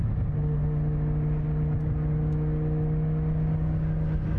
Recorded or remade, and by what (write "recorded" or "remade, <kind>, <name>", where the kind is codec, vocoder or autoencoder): recorded